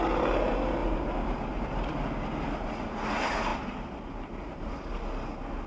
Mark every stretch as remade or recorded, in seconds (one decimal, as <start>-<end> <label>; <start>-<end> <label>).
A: 0.0-0.8 recorded; 0.8-1.9 remade; 1.9-3.5 recorded; 3.5-4.7 remade; 4.7-5.7 recorded